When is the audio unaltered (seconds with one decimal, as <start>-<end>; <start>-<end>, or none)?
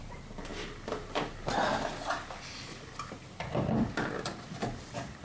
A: 0.0-5.2